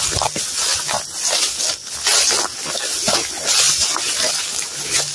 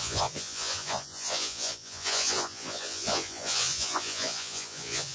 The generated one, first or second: second